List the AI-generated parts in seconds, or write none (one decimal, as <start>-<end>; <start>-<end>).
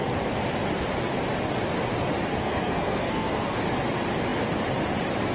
2.3-3.6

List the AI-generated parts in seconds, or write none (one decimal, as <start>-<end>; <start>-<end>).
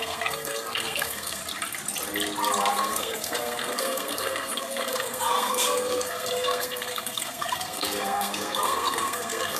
0.0-1.4; 2.7-9.6